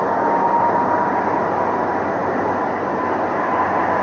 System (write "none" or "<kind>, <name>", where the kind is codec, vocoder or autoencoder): none